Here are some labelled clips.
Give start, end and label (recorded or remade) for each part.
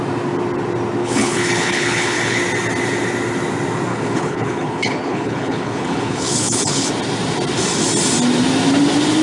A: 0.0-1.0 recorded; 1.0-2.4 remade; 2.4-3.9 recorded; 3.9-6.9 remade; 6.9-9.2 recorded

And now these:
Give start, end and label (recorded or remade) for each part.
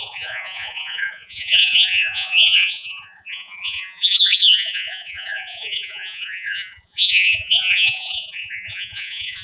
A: 0.0-9.4 remade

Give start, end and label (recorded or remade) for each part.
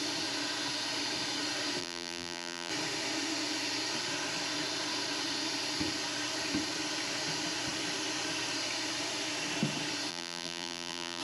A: 0.0-1.8 recorded; 1.8-2.7 remade; 2.7-10.1 recorded; 10.1-11.2 remade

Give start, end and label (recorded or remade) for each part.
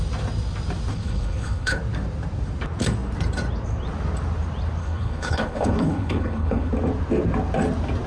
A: 0.0-0.9 recorded; 0.9-1.8 remade; 1.8-4.8 recorded; 4.8-6.7 remade; 6.7-8.1 recorded